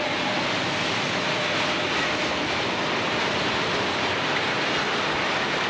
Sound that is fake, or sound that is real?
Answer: real